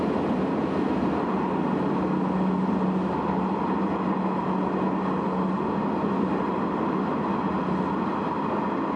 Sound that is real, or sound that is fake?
real